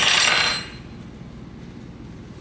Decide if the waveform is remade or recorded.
recorded